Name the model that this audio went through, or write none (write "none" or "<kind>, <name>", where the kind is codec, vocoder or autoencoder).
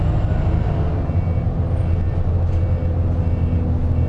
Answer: none